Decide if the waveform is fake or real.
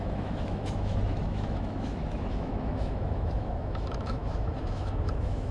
fake